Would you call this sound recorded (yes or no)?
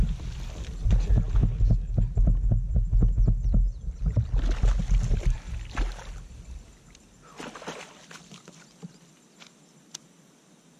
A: yes